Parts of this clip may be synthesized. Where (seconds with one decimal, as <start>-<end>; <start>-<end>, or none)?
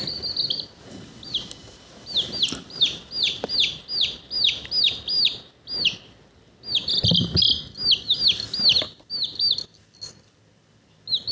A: none